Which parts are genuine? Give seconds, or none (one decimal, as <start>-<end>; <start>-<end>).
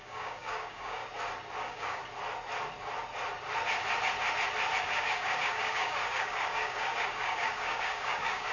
1.0-1.6; 2.0-4.8